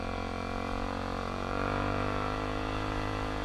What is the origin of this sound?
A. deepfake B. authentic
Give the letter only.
A